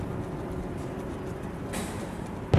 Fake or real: real